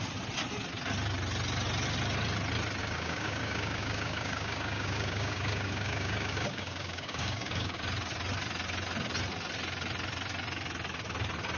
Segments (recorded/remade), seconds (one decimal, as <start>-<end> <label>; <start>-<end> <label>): 0.0-2.8 recorded; 2.8-7.8 remade; 7.8-11.6 recorded